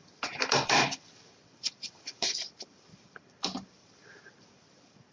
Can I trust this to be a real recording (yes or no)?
no